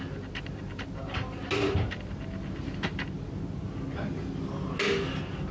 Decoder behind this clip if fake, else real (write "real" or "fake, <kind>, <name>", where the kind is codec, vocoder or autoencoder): real